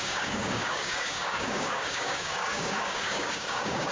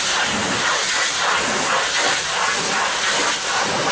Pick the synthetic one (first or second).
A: first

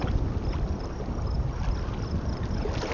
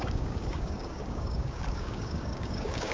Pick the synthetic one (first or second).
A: second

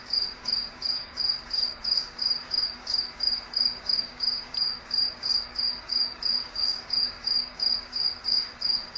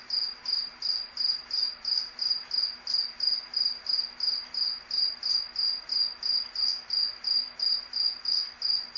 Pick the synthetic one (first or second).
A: first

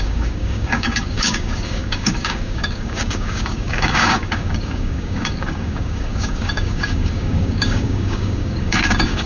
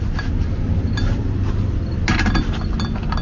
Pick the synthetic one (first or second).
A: first